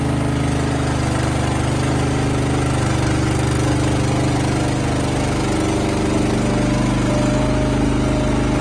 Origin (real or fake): real